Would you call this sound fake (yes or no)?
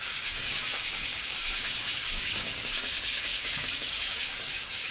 yes